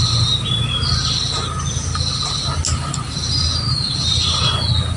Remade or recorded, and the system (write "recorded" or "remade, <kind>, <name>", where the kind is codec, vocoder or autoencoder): recorded